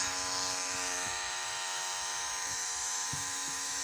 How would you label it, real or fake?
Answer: fake